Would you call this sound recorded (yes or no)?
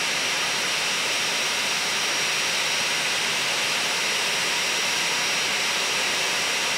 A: yes